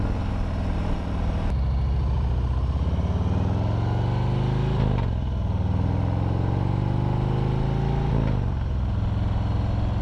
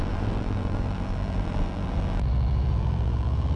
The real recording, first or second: first